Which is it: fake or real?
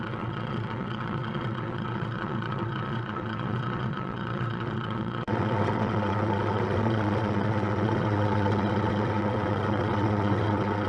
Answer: fake